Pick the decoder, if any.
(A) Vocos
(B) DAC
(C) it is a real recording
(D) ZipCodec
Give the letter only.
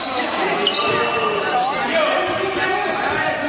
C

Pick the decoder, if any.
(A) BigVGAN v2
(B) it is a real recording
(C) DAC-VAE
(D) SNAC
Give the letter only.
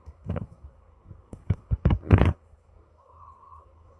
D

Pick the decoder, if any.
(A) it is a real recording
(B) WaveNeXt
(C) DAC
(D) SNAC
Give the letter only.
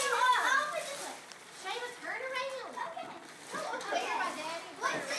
A